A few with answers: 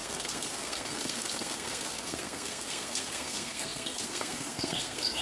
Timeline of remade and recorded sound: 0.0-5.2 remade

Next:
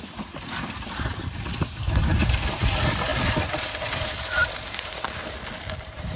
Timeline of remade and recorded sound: 0.0-6.2 recorded

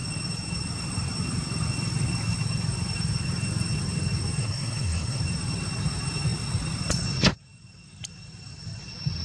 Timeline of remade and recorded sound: 0.0-4.4 recorded; 4.4-5.2 remade; 5.2-9.2 recorded

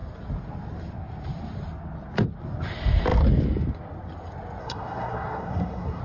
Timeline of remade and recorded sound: 0.0-4.6 recorded; 4.6-6.0 remade

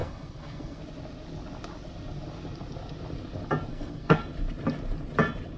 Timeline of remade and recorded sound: 0.0-0.8 remade; 0.8-3.7 recorded; 3.7-4.2 remade; 4.2-5.6 recorded

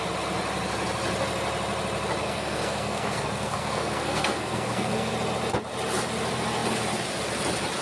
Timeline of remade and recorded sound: 0.0-2.2 recorded; 2.2-5.1 remade; 5.1-7.8 recorded

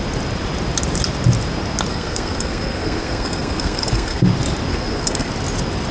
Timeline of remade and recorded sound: 0.0-1.9 recorded; 1.9-4.2 remade; 4.2-4.7 recorded; 4.7-5.3 remade; 5.3-5.9 recorded